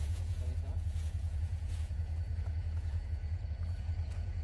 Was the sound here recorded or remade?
remade